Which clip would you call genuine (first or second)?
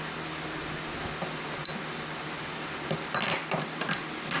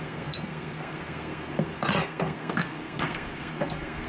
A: first